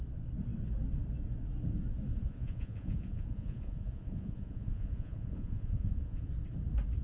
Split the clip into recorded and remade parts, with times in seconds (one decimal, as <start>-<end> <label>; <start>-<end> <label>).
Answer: 0.0-2.1 recorded; 2.1-6.3 remade; 6.3-7.0 recorded